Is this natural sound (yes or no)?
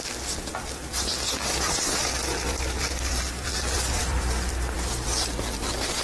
no